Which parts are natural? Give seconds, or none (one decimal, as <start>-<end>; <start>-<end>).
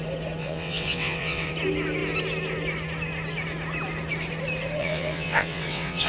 0.0-0.4; 1.5-4.8